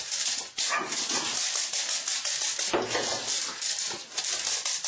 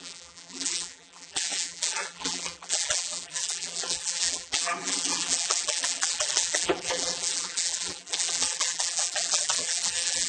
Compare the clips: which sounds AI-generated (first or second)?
second